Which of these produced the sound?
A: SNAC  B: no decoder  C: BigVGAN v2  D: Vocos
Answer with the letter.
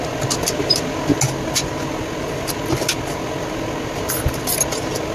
B